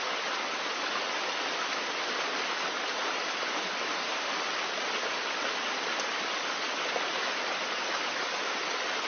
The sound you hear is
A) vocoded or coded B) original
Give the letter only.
B